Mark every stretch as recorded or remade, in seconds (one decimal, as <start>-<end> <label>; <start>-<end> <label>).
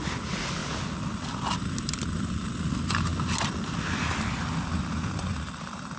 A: 0.0-6.0 recorded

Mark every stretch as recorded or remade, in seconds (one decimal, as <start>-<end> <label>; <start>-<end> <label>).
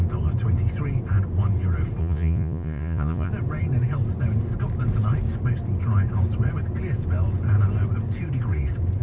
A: 0.0-2.0 recorded; 2.0-3.3 remade; 3.3-9.0 recorded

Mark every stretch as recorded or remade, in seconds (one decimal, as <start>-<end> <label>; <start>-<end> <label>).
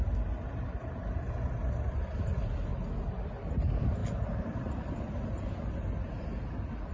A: 0.0-6.9 recorded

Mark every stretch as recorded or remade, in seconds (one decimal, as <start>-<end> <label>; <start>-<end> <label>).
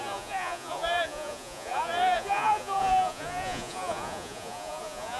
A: 0.0-5.2 remade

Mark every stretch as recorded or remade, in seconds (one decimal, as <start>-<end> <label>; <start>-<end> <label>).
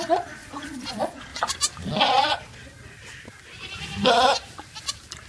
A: 0.0-1.3 remade; 1.3-2.0 recorded; 2.0-2.6 remade; 2.6-5.3 recorded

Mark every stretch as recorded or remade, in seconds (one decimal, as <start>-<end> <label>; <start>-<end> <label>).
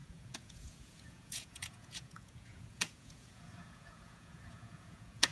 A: 0.0-5.3 remade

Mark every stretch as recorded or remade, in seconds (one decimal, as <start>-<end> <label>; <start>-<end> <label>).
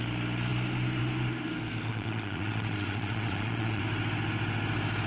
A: 0.0-1.9 recorded; 1.9-3.8 remade; 3.8-5.1 recorded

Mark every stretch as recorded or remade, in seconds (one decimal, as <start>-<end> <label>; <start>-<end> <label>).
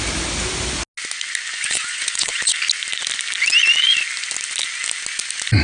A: 0.0-1.5 recorded; 1.5-2.5 remade; 2.5-5.6 recorded